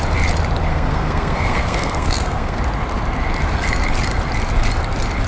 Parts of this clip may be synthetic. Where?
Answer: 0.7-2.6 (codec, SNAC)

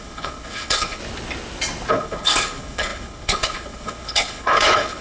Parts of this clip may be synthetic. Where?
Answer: 0.0-1.0 (codec, HILCodec); 1.9-5.0

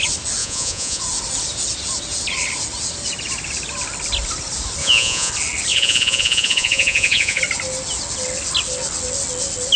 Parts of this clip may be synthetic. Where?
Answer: 0.4-1.0 (vocoder, Vocos); 4.8-5.3; 5.7-7.4

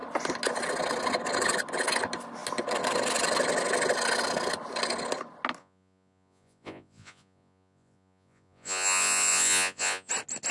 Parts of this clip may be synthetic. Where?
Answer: 5.6-10.1 (vocoder, Vocos)

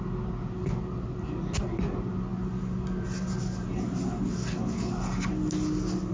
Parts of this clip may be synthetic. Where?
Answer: none

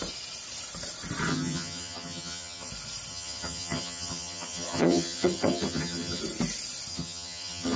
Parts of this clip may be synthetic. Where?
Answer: 1.3-2.7 (vocoder, HiFi-GAN); 3.1-6.2; 6.9-7.8

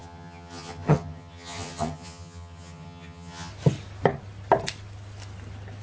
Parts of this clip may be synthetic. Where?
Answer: 0.0-3.5 (vocoder, HiFi-GAN)